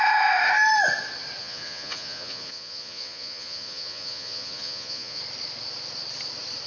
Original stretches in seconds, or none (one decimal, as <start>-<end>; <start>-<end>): 0.0-1.4; 5.2-6.7